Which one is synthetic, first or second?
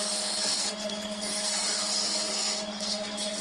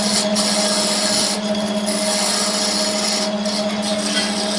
first